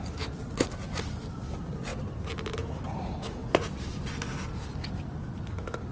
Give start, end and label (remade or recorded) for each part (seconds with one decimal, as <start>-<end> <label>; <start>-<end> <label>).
0.0-1.9 remade; 1.9-2.8 recorded; 2.8-3.4 remade; 3.4-5.9 recorded